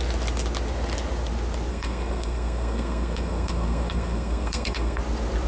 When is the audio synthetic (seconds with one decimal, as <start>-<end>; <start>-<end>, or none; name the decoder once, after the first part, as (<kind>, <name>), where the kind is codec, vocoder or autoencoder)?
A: 1.7-5.0 (codec, SNAC)